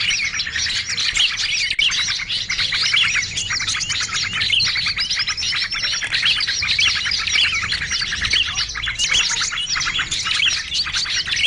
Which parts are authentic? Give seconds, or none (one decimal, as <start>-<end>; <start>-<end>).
0.0-11.5